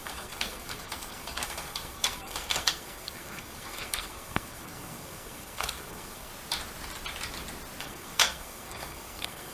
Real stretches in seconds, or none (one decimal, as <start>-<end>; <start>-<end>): 6.3-7.8

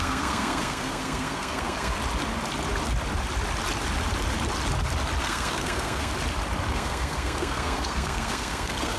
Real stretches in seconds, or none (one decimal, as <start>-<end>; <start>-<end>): 2.0-5.2; 6.1-6.7

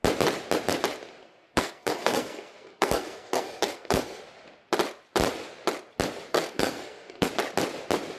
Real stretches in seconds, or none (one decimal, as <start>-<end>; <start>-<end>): 0.0-1.2; 4.2-6.3; 7.3-8.2

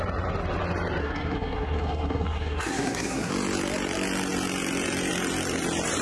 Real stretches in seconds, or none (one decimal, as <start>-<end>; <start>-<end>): 0.0-1.0; 3.3-6.0

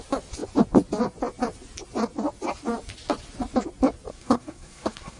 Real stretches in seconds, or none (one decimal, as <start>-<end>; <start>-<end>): 0.0-4.1

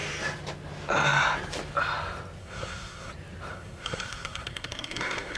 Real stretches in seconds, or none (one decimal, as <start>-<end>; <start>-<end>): 0.0-2.4; 3.1-3.5